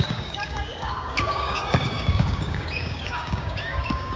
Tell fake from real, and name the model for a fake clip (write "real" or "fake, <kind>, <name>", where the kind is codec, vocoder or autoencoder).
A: fake, codec, DAC